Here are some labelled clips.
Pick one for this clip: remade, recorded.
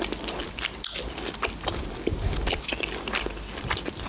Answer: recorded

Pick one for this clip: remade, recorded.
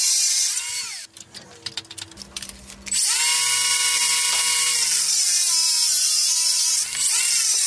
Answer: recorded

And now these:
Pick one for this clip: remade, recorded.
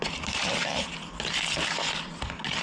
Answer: recorded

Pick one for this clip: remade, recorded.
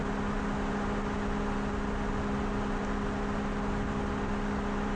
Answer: recorded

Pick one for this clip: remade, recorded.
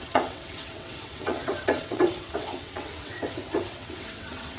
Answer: remade